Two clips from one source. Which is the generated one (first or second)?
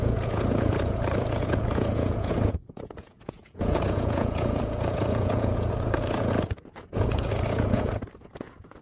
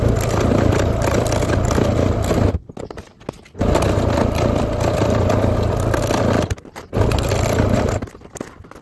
first